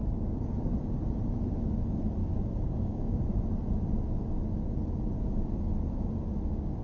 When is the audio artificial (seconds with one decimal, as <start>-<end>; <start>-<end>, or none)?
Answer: 0.0-0.7; 2.2-3.4